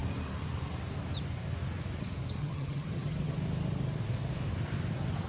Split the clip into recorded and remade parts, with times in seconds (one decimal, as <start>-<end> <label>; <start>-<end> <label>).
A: 0.0-2.4 recorded; 2.4-3.3 remade; 3.3-5.3 recorded

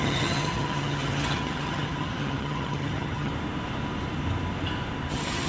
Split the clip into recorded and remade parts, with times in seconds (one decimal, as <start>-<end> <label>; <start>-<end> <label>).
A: 0.0-3.3 remade; 3.3-5.1 recorded; 5.1-5.5 remade

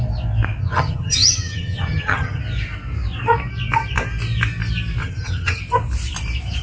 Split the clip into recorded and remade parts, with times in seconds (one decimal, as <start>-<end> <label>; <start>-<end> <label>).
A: 0.0-0.6 recorded; 0.6-2.4 remade; 2.4-5.0 recorded; 5.0-5.6 remade; 5.6-6.6 recorded

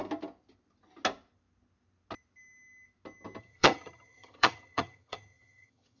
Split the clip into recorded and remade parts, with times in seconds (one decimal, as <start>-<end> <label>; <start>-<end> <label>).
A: 0.0-3.4 recorded; 3.4-6.0 remade

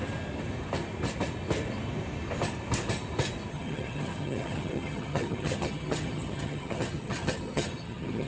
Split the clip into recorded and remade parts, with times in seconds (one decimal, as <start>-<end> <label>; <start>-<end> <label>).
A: 0.0-3.5 recorded; 3.5-8.3 remade

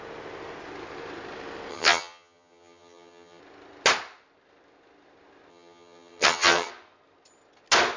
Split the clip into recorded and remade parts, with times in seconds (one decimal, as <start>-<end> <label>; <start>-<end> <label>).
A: 0.0-1.7 recorded; 1.7-3.4 remade; 3.4-5.5 recorded; 5.5-6.7 remade; 6.7-8.0 recorded